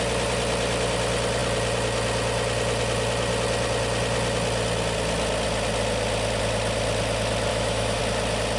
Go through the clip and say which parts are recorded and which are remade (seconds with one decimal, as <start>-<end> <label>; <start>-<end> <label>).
0.0-7.5 recorded; 7.5-8.0 remade; 8.0-8.6 recorded